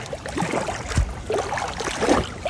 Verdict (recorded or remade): recorded